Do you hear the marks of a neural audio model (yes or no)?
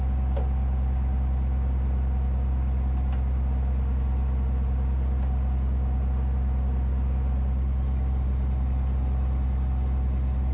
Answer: no